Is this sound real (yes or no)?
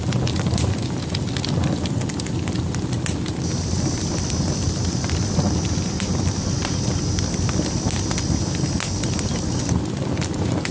yes